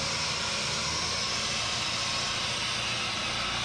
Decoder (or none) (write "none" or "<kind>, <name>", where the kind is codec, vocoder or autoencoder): none